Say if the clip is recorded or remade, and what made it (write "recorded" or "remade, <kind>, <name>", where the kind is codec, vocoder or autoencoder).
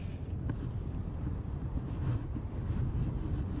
recorded